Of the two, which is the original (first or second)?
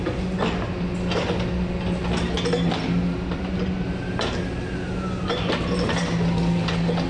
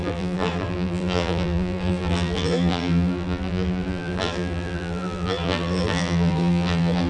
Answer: first